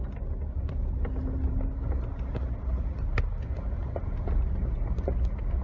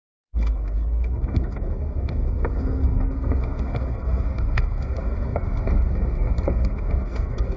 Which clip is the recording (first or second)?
first